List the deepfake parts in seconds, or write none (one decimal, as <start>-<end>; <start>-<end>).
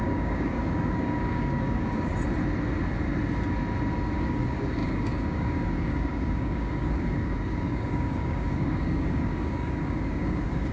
0.0-2.1; 4.1-10.7